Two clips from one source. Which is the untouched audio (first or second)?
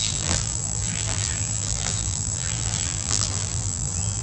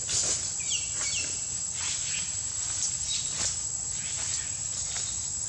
second